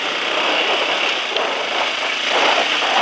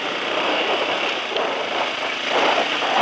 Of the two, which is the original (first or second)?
first